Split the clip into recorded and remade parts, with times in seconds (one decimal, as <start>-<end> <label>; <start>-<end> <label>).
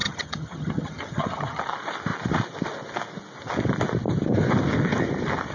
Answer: 0.0-1.6 remade; 1.6-5.5 recorded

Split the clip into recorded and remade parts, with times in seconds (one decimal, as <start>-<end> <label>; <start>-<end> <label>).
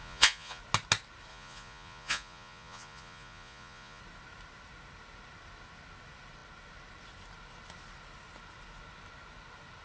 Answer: 0.0-0.6 remade; 0.6-1.3 recorded; 1.3-4.0 remade; 4.0-9.8 recorded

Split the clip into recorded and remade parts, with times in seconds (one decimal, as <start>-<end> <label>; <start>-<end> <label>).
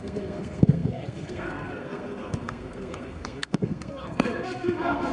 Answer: 0.0-5.1 remade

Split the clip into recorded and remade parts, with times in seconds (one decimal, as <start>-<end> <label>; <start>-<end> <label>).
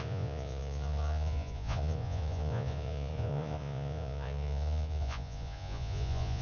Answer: 0.0-6.4 remade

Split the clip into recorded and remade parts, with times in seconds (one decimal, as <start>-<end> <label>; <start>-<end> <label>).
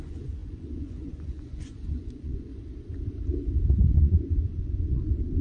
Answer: 0.0-2.5 remade; 2.5-4.0 recorded; 4.0-5.4 remade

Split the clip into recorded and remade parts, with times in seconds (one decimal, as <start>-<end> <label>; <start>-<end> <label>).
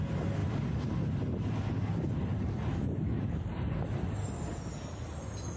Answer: 0.0-5.6 recorded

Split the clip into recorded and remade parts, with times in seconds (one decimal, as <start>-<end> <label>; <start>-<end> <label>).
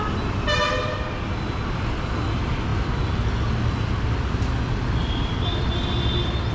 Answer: 0.0-6.5 recorded